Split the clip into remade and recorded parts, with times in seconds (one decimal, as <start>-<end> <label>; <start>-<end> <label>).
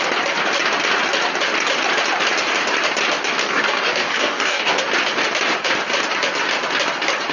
0.0-3.4 recorded; 3.4-4.8 remade; 4.8-7.3 recorded